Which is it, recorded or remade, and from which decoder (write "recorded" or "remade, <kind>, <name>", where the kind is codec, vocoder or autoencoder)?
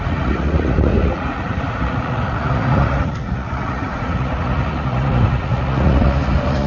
remade, vocoder, Vocos